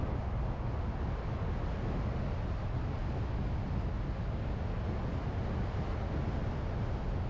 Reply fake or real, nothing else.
real